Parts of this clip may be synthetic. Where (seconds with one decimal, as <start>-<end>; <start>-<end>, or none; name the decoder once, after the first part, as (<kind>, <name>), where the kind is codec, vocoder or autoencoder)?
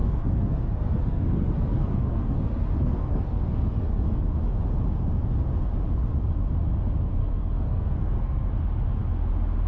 0.0-4.2 (codec, SNAC); 7.2-8.5